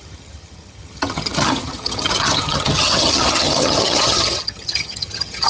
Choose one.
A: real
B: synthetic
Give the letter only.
B